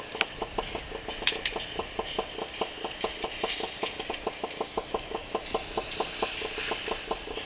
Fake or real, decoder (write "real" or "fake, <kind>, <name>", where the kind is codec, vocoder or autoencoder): real